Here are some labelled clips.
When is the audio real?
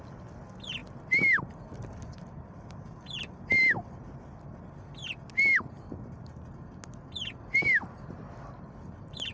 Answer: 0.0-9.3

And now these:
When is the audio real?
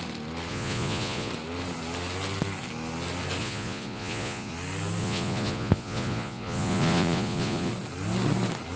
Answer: 0.0-0.5; 1.3-3.4; 4.5-5.0; 7.7-8.8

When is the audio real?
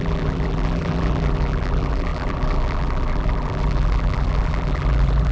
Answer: none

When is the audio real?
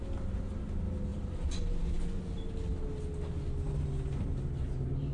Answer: 0.0-1.1; 2.2-5.1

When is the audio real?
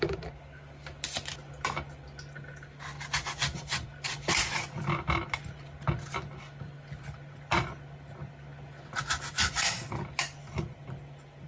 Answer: 0.0-11.5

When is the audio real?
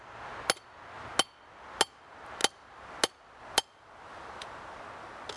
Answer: 0.0-5.4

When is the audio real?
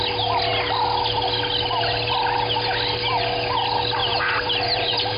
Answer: 0.0-4.0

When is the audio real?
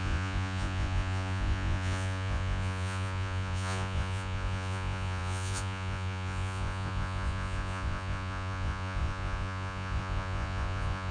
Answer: none